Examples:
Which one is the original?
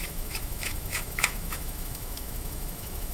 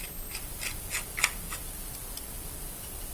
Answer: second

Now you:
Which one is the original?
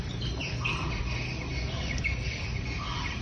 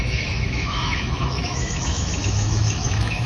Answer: first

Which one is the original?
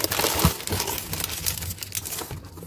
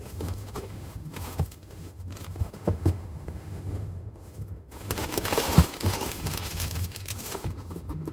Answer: first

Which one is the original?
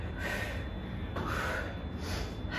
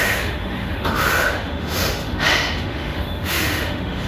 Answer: first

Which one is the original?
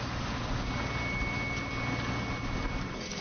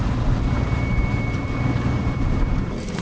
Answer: first